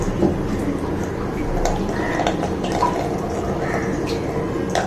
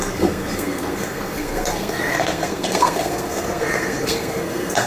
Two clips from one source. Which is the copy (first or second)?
second